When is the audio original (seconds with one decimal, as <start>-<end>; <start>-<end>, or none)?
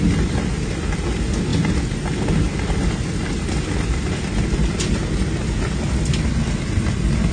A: 0.0-7.3